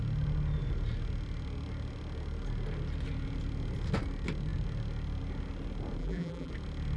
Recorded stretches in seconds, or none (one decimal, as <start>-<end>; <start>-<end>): 0.0-6.0; 6.5-7.0